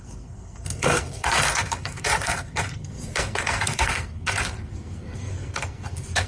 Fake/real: fake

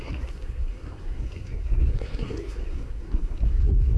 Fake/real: fake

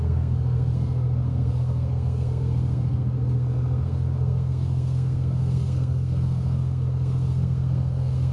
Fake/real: fake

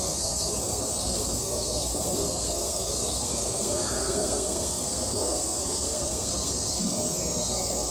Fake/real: fake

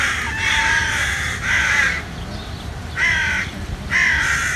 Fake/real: real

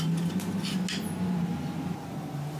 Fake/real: real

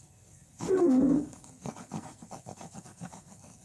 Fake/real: fake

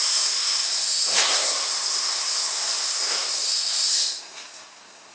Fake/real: fake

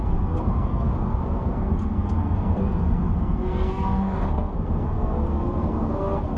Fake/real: fake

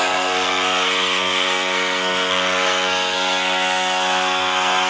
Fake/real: fake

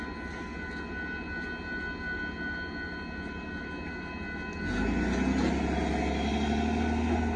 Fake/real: real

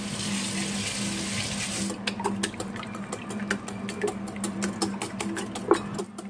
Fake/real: real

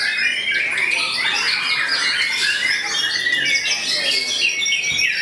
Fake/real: real